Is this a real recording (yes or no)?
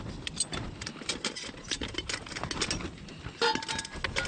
yes